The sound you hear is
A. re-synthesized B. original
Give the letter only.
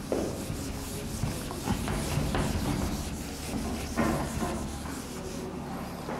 B